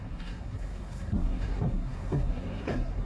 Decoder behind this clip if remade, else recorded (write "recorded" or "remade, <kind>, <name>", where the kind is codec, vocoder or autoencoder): remade, codec, SNAC